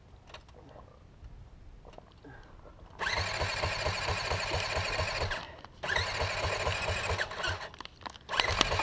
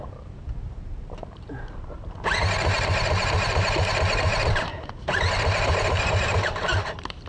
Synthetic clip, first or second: second